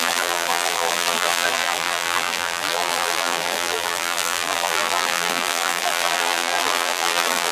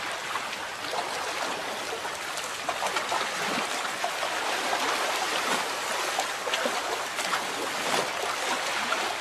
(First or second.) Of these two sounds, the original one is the second